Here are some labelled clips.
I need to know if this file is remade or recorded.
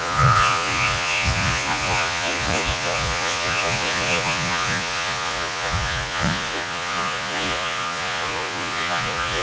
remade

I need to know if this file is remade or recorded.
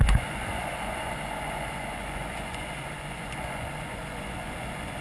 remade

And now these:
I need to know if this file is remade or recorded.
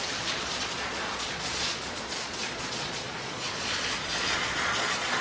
remade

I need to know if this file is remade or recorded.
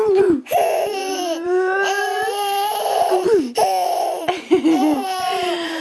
remade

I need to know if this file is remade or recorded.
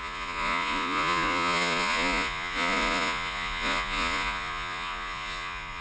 remade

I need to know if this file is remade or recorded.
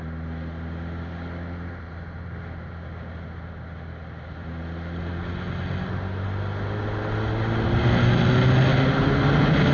recorded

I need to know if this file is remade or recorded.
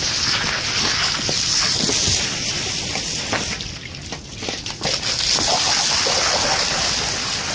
recorded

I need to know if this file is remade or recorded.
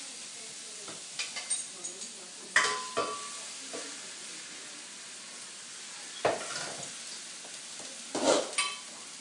recorded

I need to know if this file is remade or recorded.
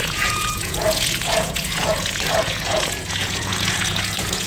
remade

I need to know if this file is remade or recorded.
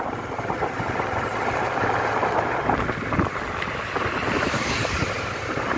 recorded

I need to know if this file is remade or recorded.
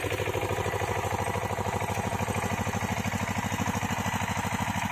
recorded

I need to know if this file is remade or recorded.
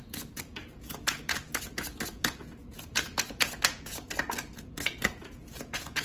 remade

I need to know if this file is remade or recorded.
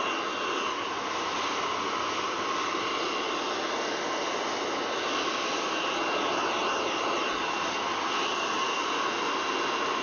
recorded